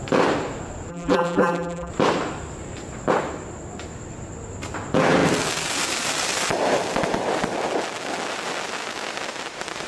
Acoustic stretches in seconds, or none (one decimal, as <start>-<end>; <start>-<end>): 0.0-0.9; 1.9-9.9